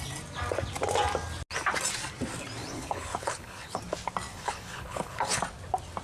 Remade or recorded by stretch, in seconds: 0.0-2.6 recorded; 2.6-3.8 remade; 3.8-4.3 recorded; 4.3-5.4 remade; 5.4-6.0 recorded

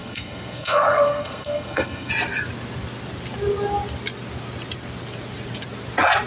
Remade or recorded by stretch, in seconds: 0.0-2.1 remade; 2.1-6.3 recorded

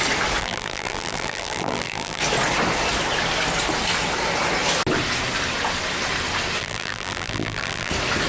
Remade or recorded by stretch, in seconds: 0.0-0.4 recorded; 0.4-2.2 remade; 2.2-6.6 recorded; 6.6-7.9 remade; 7.9-8.3 recorded